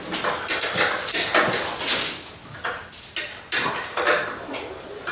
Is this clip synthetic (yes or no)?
no